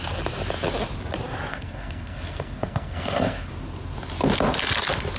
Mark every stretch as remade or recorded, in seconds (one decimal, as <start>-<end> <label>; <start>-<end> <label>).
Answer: 0.0-1.5 recorded; 1.5-3.5 remade; 3.5-5.2 recorded